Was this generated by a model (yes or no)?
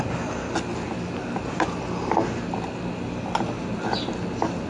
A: no